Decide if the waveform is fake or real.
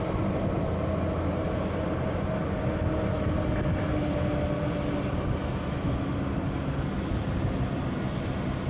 real